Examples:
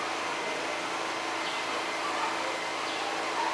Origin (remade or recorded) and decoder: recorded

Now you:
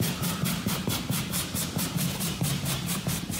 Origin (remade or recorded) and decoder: remade, vocoder, BigVGAN v2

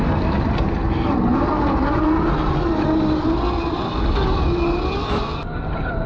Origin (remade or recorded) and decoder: recorded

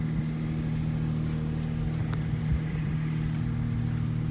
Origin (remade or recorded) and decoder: recorded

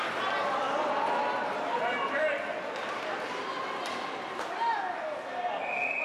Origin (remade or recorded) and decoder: recorded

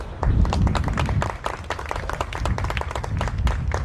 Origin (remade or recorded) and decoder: remade, vocoder, BigVGAN v2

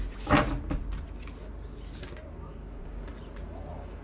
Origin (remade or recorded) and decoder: recorded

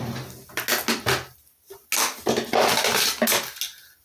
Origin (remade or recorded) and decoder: recorded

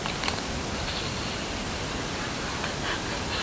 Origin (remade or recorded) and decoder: remade, vocoder, BigVGAN v2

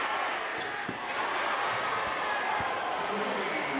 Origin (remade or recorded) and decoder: recorded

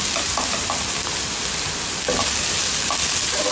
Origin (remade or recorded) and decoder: recorded